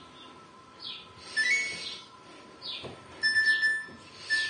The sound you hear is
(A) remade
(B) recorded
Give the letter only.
B